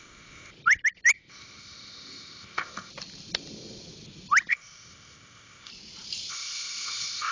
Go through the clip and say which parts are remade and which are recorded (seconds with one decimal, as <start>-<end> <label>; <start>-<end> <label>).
0.0-0.5 remade; 0.5-1.3 recorded; 1.3-2.9 remade; 2.9-4.5 recorded; 4.5-5.7 remade; 5.7-6.3 recorded; 6.3-7.3 remade